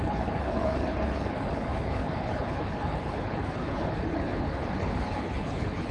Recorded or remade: remade